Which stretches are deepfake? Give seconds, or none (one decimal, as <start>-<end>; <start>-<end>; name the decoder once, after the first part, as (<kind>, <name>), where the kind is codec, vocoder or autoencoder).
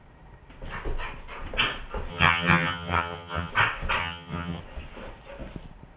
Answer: 2.1-3.5 (vocoder, HiFi-GAN); 4.0-4.6